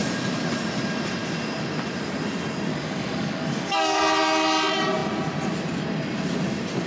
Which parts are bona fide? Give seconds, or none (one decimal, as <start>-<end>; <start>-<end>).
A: 0.0-2.7; 4.0-6.9